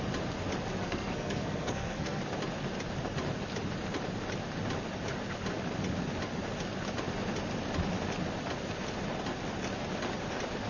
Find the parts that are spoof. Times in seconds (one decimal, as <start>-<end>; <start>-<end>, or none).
0.8-2.2